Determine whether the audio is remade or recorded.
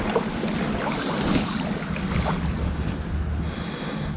recorded